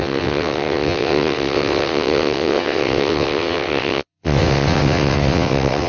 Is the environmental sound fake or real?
fake